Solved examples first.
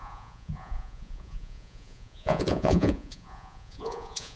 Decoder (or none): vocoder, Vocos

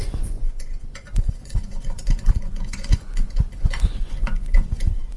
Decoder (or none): vocoder, Vocos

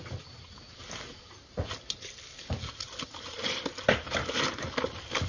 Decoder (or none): none